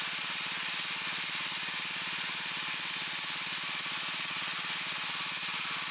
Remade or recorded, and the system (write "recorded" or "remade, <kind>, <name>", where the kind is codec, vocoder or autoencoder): recorded